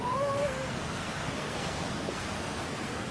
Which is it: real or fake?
fake